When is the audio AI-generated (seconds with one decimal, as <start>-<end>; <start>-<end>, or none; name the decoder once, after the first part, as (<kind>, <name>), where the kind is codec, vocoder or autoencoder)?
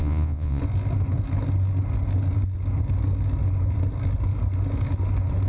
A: 0.0-0.6 (vocoder, Vocos)